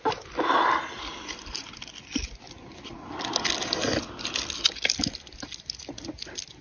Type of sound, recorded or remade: recorded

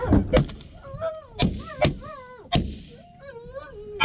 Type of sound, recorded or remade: recorded